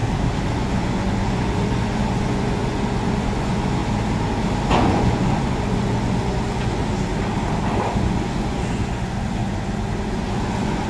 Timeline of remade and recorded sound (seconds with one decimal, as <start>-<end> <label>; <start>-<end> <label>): 0.0-0.5 recorded; 0.5-3.8 remade; 3.8-4.7 recorded; 4.7-6.8 remade; 6.8-7.9 recorded; 7.9-9.4 remade; 9.4-10.0 recorded; 10.0-10.9 remade